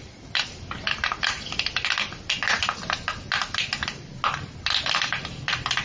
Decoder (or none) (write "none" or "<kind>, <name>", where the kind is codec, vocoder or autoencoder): none